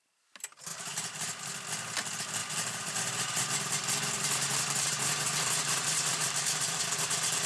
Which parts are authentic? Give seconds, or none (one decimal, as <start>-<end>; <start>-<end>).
0.0-0.7; 1.5-2.4; 6.8-7.5